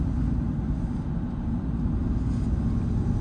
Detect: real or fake real